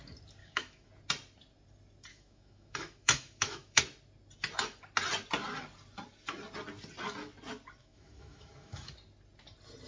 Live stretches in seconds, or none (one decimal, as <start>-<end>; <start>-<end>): 0.0-0.4; 0.9-2.1; 3.8-7.8; 8.9-9.9